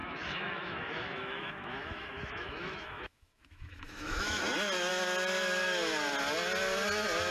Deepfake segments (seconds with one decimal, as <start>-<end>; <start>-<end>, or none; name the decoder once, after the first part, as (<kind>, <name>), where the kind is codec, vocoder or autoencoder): 0.0-4.4 (autoencoder, DAC-VAE)